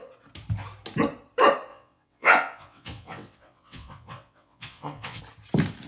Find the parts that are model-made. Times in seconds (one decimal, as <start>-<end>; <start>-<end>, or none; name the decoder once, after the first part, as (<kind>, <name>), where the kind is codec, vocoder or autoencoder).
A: 1.7-5.2 (vocoder, WaveNeXt)